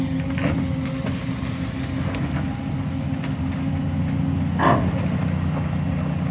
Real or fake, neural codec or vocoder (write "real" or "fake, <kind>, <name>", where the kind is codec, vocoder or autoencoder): real